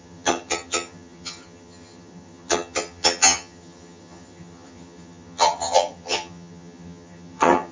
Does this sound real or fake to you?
fake